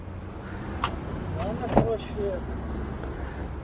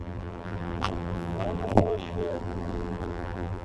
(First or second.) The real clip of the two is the first